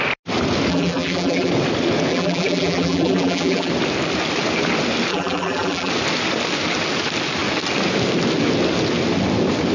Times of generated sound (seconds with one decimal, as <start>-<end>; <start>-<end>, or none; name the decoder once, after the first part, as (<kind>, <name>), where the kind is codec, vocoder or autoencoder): 0.7-1.5 (vocoder, BigVGAN v2); 2.1-3.7; 5.1-5.9